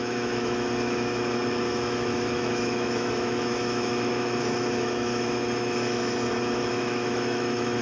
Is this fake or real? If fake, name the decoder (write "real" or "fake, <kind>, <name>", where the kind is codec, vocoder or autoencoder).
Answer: fake, autoencoder, DAC-VAE